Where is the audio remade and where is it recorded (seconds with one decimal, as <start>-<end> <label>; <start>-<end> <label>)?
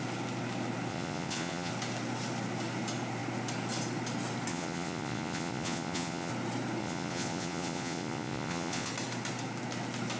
0.0-0.9 recorded; 0.9-1.7 remade; 1.7-4.5 recorded; 4.5-6.3 remade; 6.3-6.8 recorded; 6.8-8.9 remade; 8.9-10.2 recorded